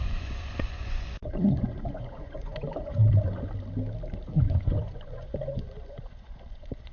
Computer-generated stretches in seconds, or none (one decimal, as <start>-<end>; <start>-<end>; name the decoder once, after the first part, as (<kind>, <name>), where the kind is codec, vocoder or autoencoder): 0.0-3.0 (vocoder, Vocos); 4.4-6.9